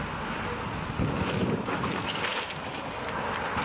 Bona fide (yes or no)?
yes